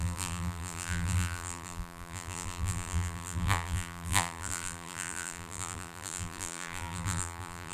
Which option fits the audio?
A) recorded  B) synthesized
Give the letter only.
B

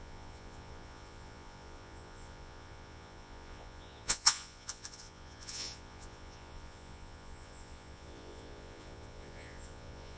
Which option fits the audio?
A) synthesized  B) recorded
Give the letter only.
A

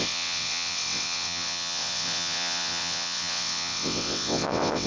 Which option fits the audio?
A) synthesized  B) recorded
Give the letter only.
A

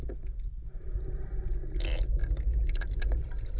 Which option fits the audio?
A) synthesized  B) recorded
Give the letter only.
B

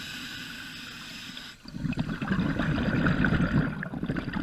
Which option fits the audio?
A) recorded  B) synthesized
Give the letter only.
A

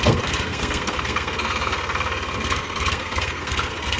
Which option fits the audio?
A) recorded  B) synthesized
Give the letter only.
B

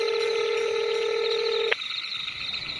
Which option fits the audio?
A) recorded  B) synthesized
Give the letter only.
A